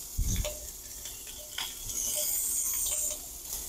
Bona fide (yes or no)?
yes